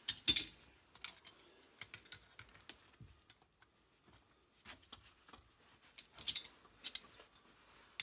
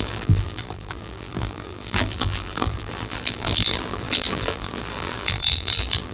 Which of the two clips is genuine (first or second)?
first